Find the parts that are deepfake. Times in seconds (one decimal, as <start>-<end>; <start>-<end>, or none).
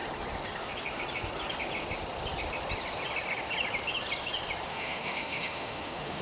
4.7-6.2